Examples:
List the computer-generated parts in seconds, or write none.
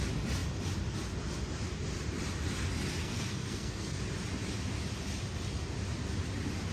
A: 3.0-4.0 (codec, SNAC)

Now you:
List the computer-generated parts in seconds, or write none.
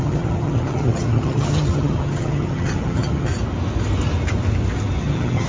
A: 0.0-3.3 (vocoder, HiFi-GAN); 5.0-5.5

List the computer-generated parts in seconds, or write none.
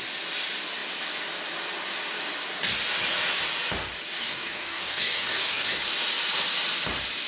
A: 4.2-5.8 (codec, DAC)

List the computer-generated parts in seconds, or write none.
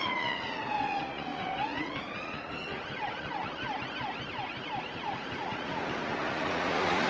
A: 0.0-3.6 (vocoder, Vocos); 4.8-7.1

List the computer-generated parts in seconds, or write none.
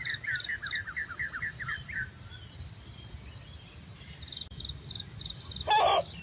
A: none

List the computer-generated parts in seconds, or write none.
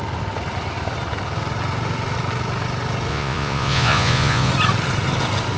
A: 3.1-4.5 (vocoder, Vocos)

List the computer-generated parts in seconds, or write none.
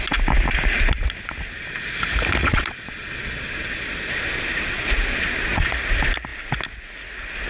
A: 2.4-5.7 (vocoder, Vocos)